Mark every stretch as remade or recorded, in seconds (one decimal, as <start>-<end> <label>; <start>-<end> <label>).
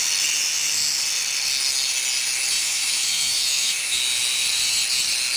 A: 0.0-2.6 recorded; 2.6-4.0 remade; 4.0-5.4 recorded